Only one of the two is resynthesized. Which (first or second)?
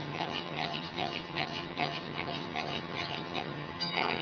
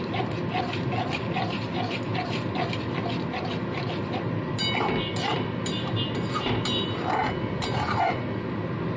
first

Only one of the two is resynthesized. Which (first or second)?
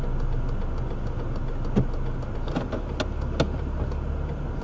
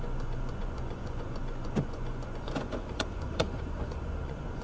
second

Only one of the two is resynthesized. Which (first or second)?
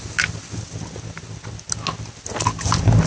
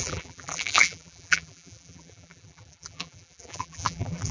second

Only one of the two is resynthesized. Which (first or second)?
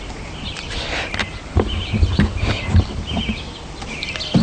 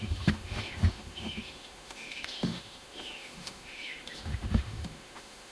second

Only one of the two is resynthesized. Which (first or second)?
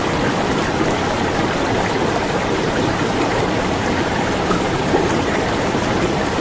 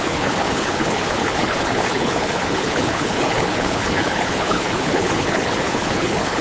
second